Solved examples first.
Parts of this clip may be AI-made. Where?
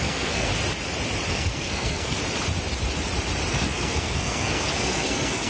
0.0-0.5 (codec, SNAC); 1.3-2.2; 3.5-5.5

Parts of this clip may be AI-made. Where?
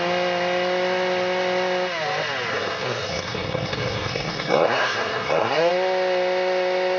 2.5-5.7 (codec, SNAC)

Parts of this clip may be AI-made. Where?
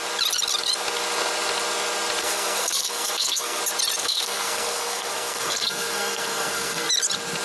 2.2-3.6 (codec, SNAC); 4.0-6.9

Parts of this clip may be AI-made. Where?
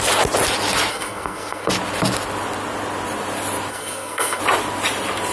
0.9-1.7 (codec, SNAC); 3.7-4.4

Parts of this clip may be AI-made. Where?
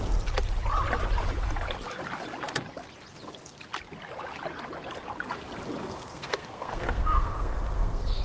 5.8-8.2 (codec, SNAC)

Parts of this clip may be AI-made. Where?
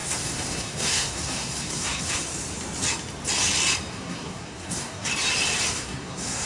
0.0-2.3 (codec, SNAC); 3.9-5.1; 5.7-6.5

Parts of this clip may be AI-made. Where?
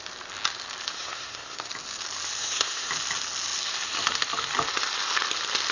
0.9-1.7 (codec, SNAC); 2.4-2.9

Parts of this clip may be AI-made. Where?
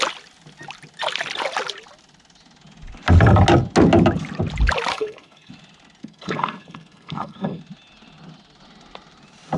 4.9-5.5 (codec, SNAC); 6.0-7.6